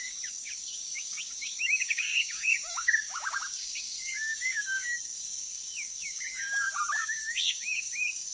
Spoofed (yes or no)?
yes